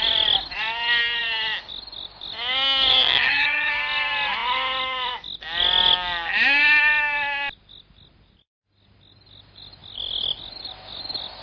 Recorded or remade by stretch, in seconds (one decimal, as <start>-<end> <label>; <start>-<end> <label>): 0.0-2.9 recorded; 2.9-3.7 remade; 3.7-11.4 recorded